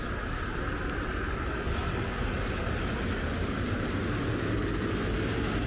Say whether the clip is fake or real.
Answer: real